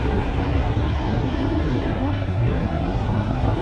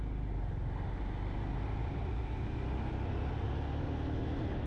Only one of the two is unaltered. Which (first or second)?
second